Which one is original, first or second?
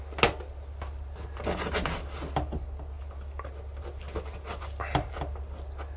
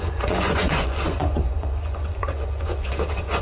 first